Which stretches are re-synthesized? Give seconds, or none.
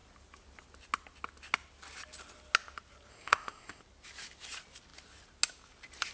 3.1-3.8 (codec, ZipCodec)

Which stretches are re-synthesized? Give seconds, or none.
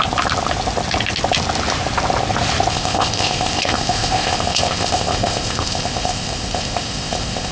2.7-7.5 (codec, ZipCodec)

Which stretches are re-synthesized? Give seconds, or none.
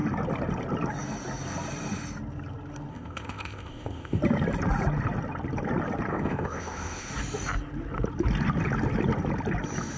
2.9-4.2 (codec, ZipCodec); 6.1-7.1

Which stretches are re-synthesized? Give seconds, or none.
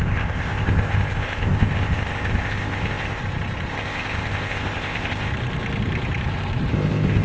0.0-3.2 (codec, ZipCodec); 3.7-5.3; 6.7-7.2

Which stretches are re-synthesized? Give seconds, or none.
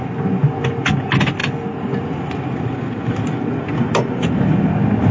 none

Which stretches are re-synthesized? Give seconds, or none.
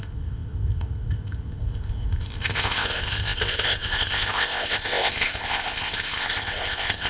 0.0-7.1 (codec, ZipCodec)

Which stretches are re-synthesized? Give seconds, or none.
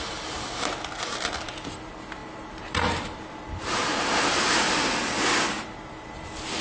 none